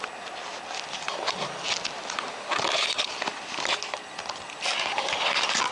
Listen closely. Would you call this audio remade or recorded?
recorded